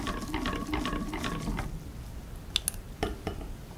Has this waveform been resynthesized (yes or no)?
no